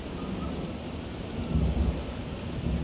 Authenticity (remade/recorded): recorded